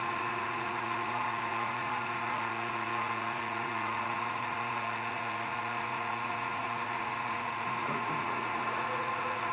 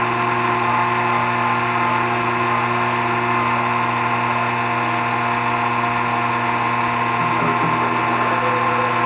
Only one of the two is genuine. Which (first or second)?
second